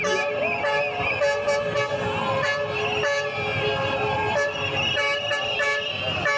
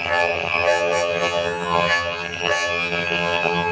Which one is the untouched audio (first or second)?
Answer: first